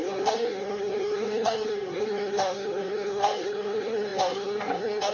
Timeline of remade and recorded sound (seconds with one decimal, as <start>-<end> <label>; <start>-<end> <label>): 0.0-5.1 remade

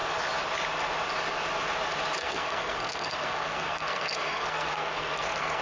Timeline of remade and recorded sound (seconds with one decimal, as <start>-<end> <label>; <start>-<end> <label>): 0.0-2.2 recorded; 2.2-5.6 remade